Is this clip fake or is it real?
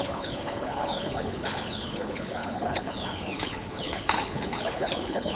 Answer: fake